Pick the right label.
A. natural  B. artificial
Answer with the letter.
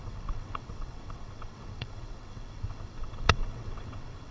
B